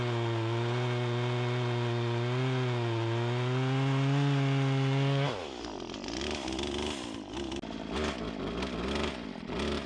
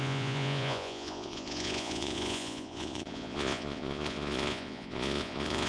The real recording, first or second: first